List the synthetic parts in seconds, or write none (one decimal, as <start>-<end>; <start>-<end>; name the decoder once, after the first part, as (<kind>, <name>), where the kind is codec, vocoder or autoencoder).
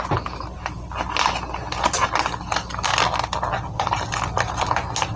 none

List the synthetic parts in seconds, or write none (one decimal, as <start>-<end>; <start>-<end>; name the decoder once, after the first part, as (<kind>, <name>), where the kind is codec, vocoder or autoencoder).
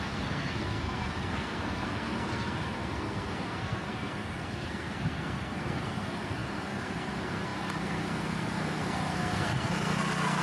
0.0-10.4 (codec, SNAC)